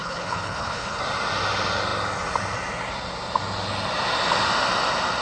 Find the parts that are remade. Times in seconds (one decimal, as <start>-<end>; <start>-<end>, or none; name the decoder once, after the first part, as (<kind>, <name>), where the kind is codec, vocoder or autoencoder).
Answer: 0.0-1.0 (codec, HILCodec)